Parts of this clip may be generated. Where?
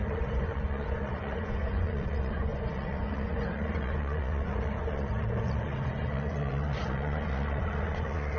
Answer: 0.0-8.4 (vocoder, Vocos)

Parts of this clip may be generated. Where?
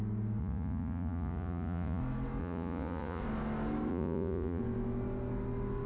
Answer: 0.4-2.0 (vocoder, Vocos); 2.4-3.2; 3.9-4.6